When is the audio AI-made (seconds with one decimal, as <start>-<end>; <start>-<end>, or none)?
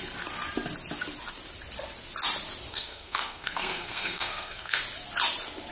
2.7-4.8